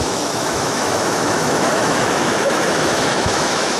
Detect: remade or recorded remade